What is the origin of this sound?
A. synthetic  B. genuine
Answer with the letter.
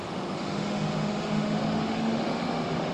A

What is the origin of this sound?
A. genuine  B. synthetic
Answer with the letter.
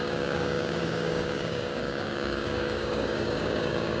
B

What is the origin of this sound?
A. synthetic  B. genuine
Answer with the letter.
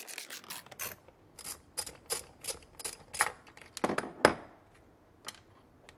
B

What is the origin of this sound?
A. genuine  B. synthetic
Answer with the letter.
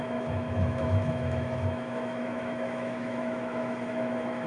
B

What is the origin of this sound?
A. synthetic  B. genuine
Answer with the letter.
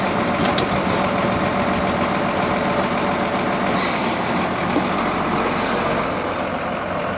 B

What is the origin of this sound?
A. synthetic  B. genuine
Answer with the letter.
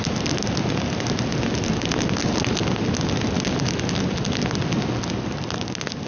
B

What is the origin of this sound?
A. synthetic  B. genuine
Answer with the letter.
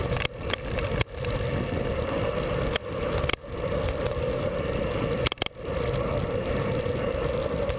A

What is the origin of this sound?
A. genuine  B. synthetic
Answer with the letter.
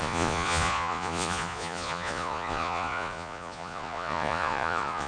B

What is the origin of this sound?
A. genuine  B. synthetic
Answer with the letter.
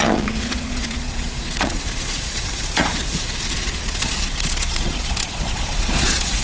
B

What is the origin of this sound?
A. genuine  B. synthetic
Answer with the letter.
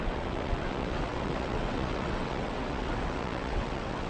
B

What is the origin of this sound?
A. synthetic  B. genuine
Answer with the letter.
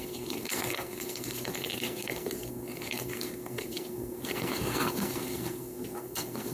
A